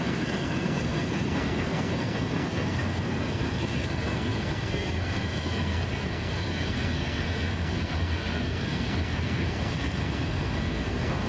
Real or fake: fake